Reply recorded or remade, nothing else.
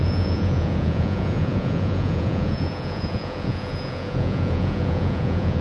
remade